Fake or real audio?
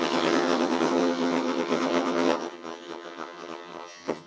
fake